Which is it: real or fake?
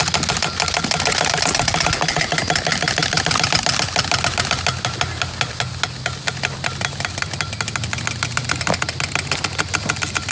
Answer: real